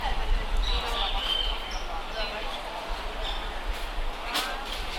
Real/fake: real